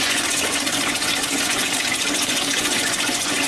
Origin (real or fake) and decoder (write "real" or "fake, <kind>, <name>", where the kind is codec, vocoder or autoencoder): fake, vocoder, Vocos